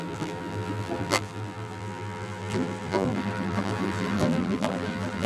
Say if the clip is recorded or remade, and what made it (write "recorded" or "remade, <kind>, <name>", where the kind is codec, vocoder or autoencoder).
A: remade, vocoder, BigVGAN v2